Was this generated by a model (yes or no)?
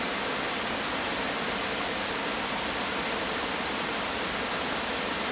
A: no